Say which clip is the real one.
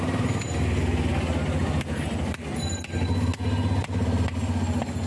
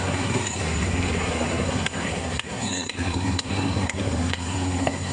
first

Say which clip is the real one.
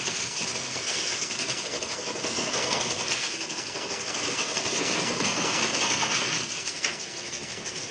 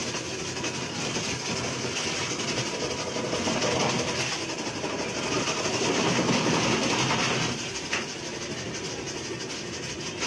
second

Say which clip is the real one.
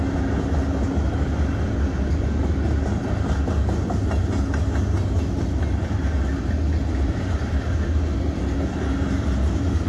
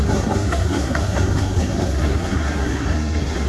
first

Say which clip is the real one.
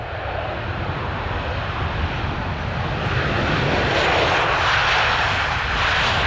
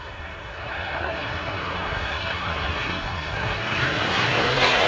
first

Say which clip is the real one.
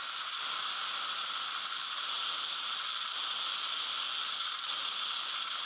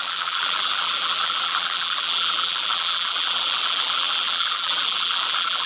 first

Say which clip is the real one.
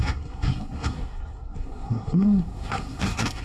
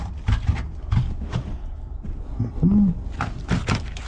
second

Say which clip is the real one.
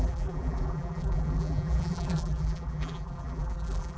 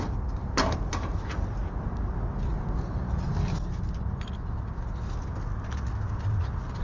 second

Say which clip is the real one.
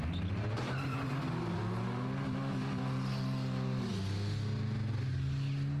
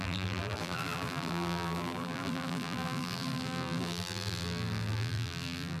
first